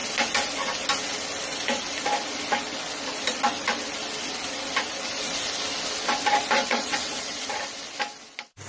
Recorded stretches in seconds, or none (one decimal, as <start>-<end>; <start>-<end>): 0.0-6.6; 7.5-8.7